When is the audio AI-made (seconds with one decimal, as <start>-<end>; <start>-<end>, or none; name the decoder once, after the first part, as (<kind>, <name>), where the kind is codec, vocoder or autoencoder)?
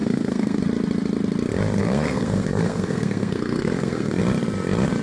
0.0-0.6 (codec, SNAC); 1.8-4.2